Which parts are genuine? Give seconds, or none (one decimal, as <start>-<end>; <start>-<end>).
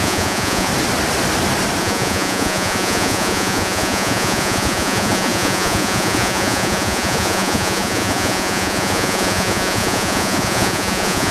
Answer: 0.7-1.8